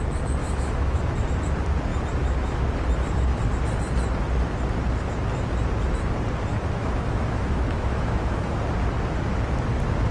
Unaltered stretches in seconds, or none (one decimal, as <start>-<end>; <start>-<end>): 0.0-0.4; 1.0-6.5; 8.6-10.1

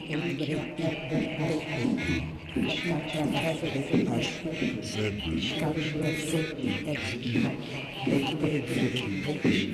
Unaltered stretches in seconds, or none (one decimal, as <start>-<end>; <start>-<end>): 0.0-5.4; 6.0-7.2